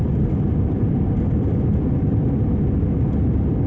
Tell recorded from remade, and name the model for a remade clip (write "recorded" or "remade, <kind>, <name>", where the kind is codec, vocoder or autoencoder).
recorded